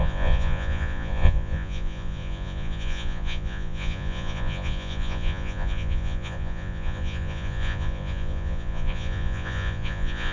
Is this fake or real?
fake